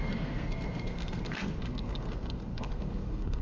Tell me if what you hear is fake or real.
fake